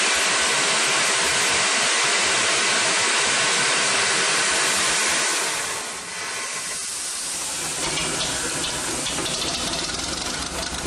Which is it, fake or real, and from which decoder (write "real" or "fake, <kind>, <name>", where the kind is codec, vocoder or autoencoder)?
real